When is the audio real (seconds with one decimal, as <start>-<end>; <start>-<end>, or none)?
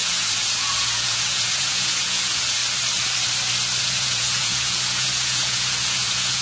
2.6-3.8